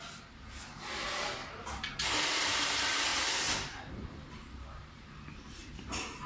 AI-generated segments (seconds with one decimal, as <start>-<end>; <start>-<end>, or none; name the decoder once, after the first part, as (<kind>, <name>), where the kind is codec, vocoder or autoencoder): 1.4-2.0 (vocoder, BigVGAN v2)